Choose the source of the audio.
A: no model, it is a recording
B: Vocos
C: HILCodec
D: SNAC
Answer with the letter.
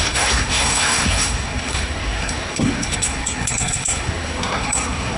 D